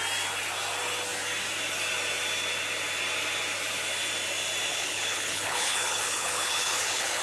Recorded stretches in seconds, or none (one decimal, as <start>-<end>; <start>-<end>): 0.0-4.7